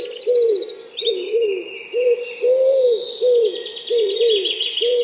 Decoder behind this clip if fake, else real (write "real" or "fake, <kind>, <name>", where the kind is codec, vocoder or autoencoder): real